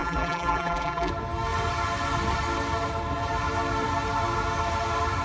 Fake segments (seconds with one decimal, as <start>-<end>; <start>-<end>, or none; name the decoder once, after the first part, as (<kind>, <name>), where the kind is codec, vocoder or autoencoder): 0.0-1.1 (vocoder, BigVGAN v2)